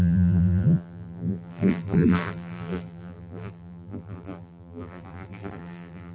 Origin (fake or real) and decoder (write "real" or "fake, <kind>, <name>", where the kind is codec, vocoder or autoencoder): fake, vocoder, BigVGAN v2